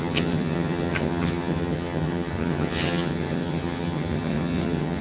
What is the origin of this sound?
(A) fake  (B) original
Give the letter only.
A